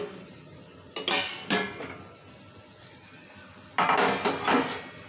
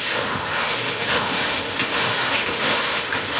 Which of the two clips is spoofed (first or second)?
second